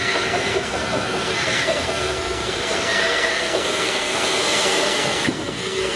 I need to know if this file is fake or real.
fake